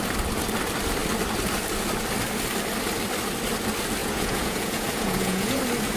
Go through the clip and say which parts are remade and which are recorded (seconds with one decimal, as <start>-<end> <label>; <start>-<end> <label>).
0.0-4.0 recorded; 4.0-5.6 remade; 5.6-6.0 recorded

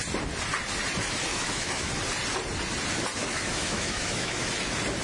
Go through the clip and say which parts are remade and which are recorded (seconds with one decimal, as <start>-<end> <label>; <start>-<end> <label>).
0.0-1.3 recorded; 1.3-1.9 remade; 1.9-3.2 recorded; 3.2-4.5 remade; 4.5-5.0 recorded

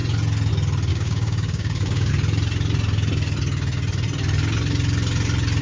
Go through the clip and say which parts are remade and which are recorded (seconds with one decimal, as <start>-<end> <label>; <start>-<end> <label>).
0.0-0.9 recorded; 0.9-2.1 remade; 2.1-5.6 recorded

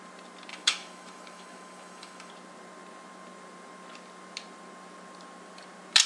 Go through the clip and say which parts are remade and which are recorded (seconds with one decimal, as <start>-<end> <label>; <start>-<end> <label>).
0.0-0.5 recorded; 0.5-2.3 remade; 2.3-6.1 recorded

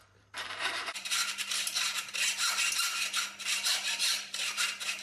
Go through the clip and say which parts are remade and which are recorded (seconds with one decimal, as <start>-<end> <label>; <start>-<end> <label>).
0.0-1.2 remade; 1.2-3.5 recorded; 3.5-5.0 remade

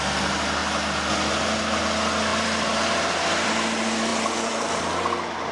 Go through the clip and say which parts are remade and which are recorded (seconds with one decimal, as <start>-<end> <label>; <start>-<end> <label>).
0.0-2.3 recorded; 2.3-3.5 remade; 3.5-4.1 recorded; 4.1-4.8 remade; 4.8-5.5 recorded

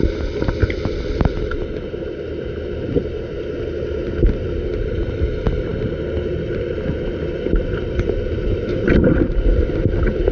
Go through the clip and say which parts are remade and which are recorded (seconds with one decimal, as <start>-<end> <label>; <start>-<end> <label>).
0.0-10.3 recorded